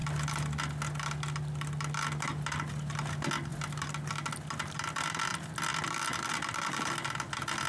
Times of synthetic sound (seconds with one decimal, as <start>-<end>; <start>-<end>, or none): none